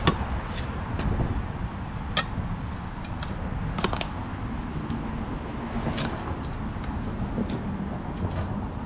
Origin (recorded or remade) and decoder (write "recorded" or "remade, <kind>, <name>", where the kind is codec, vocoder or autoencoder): recorded